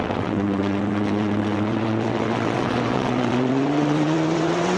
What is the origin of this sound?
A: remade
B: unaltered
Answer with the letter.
A